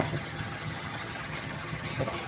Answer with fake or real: fake